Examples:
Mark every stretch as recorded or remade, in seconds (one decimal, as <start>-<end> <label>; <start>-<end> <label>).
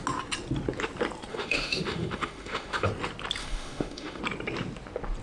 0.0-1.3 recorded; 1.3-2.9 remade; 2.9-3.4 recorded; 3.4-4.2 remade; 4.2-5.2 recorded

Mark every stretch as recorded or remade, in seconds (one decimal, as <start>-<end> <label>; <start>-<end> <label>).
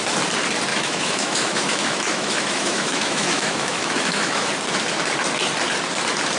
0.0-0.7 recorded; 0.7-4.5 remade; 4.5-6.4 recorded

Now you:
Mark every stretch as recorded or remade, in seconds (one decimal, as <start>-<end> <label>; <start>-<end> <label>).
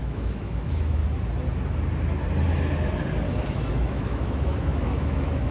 0.0-1.0 remade; 1.0-3.3 recorded; 3.3-5.5 remade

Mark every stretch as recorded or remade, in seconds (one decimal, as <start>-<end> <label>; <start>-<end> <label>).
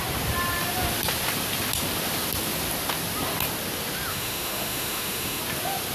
0.0-4.1 recorded; 4.1-5.4 remade; 5.4-5.9 recorded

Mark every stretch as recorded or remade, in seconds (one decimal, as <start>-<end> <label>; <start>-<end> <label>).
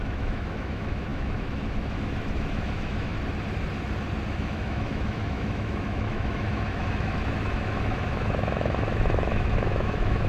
0.0-3.1 remade; 3.1-4.3 recorded; 4.3-10.3 remade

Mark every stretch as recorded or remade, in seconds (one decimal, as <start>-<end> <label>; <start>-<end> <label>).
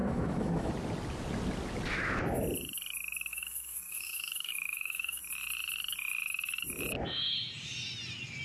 0.0-0.7 remade; 0.7-3.3 recorded; 3.3-5.2 remade; 5.2-8.4 recorded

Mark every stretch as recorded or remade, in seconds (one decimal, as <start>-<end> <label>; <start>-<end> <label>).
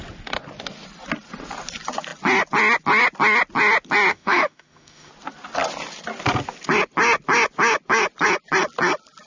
0.0-4.1 recorded; 4.1-5.1 remade; 5.1-9.3 recorded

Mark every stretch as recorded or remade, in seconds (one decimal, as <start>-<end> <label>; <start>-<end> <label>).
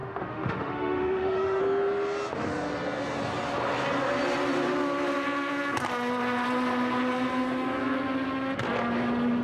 0.0-1.6 remade; 1.6-9.4 recorded